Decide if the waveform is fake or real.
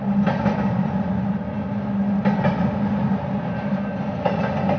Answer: real